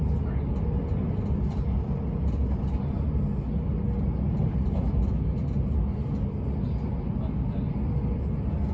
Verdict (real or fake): real